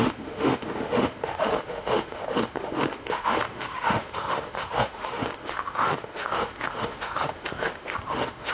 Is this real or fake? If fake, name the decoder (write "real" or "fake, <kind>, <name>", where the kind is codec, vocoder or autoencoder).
fake, autoencoder, DAC-VAE